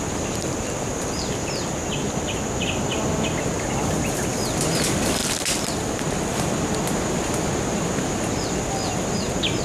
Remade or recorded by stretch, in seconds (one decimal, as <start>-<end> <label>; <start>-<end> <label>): 0.0-9.6 recorded